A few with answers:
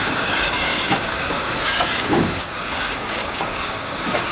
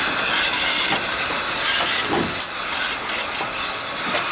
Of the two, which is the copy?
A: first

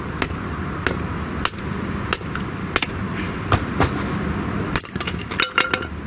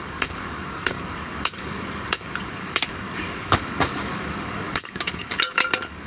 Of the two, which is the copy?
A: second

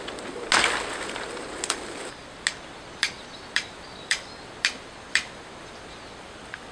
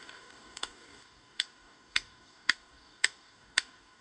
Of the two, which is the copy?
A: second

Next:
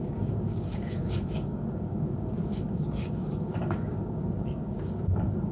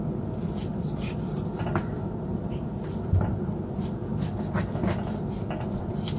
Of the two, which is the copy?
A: first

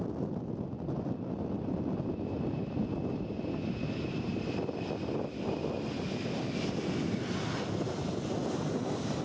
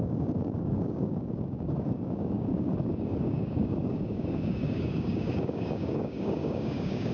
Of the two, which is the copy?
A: second